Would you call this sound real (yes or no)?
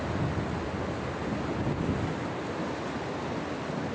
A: yes